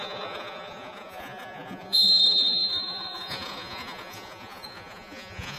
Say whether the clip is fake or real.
fake